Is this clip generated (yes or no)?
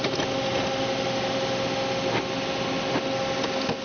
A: no